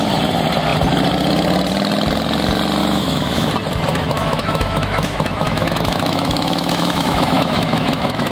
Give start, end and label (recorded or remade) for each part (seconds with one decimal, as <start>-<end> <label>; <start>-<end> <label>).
0.0-2.8 recorded; 2.8-3.5 remade; 3.5-3.9 recorded; 3.9-8.3 remade